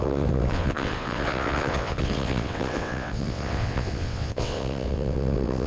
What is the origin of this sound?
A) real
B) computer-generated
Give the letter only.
B